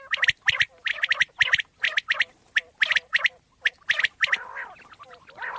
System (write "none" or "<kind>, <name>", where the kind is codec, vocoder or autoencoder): none